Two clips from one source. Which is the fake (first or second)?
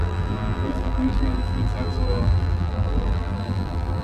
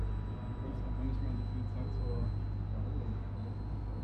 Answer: first